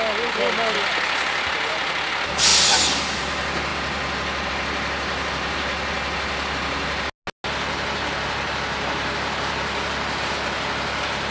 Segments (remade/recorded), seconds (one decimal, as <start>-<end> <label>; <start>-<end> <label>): 0.0-11.3 recorded